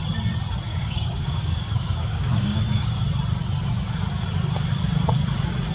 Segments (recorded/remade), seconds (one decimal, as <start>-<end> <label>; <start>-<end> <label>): 0.0-0.7 recorded; 0.7-3.0 remade; 3.0-5.7 recorded